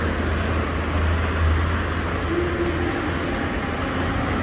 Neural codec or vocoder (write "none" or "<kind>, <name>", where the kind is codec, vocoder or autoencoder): none